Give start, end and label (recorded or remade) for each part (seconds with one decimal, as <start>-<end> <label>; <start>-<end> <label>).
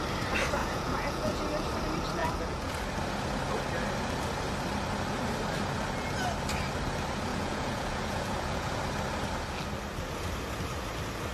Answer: 0.0-0.6 recorded; 0.6-1.4 remade; 1.4-2.2 recorded; 2.2-2.7 remade; 2.7-7.3 recorded; 7.3-8.8 remade; 8.8-11.3 recorded